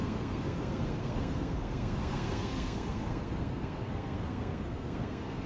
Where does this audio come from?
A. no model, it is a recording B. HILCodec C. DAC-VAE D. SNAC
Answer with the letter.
D